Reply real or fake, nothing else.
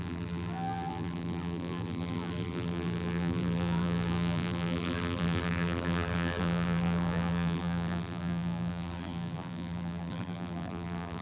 fake